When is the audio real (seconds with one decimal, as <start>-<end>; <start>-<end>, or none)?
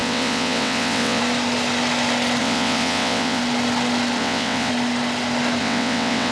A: 1.2-2.4; 3.4-4.2; 4.7-5.6